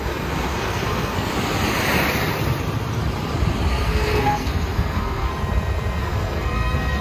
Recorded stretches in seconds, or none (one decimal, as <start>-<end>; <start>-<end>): 1.3-3.7; 5.3-6.0